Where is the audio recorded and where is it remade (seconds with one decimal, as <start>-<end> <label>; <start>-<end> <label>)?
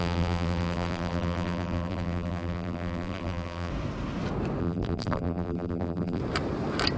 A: 0.0-3.7 remade; 3.7-4.6 recorded; 4.6-6.2 remade; 6.2-7.0 recorded